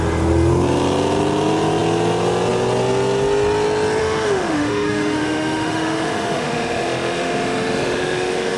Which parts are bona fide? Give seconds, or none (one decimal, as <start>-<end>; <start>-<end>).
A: 0.0-4.0